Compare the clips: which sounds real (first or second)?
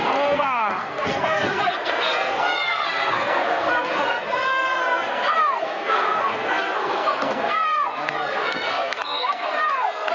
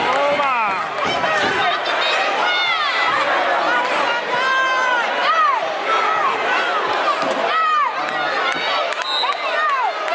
second